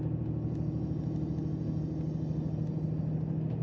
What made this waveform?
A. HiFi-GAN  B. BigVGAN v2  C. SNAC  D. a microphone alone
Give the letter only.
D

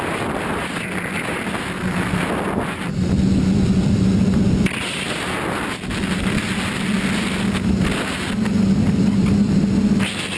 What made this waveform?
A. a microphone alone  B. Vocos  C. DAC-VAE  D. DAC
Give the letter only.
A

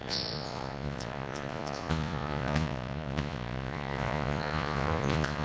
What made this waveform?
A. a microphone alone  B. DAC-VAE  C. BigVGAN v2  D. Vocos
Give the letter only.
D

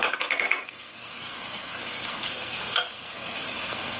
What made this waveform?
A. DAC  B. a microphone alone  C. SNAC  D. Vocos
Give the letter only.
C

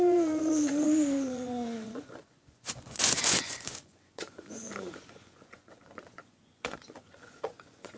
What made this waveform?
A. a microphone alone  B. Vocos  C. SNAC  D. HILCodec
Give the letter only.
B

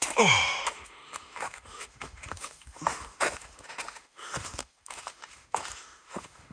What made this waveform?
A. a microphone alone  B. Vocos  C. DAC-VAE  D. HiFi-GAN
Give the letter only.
C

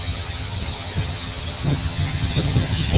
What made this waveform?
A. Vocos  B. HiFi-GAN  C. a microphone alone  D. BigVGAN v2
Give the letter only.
B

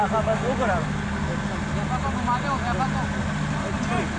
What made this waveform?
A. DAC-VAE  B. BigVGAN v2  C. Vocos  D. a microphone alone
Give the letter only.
D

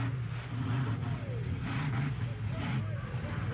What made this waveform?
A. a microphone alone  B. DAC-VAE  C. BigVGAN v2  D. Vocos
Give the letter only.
A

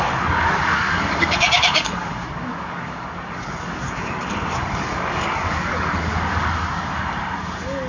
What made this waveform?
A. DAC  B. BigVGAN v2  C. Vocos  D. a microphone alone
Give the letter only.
A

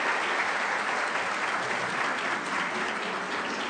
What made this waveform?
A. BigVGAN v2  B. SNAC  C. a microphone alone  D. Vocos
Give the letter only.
C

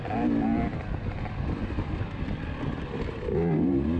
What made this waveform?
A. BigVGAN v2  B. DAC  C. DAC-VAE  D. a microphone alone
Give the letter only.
D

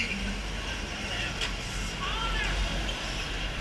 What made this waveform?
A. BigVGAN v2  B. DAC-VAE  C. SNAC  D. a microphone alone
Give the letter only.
A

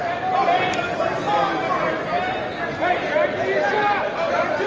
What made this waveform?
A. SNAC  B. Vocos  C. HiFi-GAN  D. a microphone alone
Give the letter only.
D